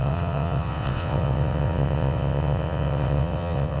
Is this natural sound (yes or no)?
no